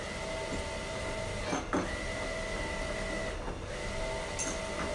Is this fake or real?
real